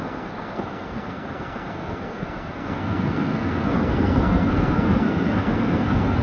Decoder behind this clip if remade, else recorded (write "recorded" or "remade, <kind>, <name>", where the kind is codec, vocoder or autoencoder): remade, codec, SNAC